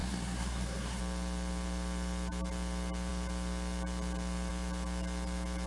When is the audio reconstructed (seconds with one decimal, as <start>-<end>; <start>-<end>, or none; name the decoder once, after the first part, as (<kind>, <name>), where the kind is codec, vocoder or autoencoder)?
0.0-1.0 (codec, SNAC)